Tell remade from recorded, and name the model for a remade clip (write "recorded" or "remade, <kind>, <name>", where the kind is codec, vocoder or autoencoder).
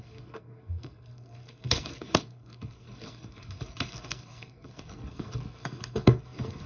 remade, codec, SNAC